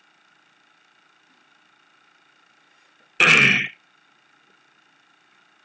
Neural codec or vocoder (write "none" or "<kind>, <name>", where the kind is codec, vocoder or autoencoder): none